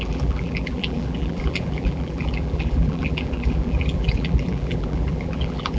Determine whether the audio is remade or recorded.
remade